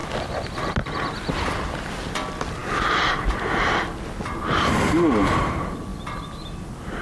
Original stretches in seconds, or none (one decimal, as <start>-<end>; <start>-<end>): 0.0-7.0